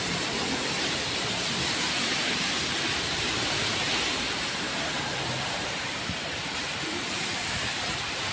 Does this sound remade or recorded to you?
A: remade